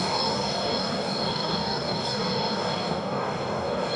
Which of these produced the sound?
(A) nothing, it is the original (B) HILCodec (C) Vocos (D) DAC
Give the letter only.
D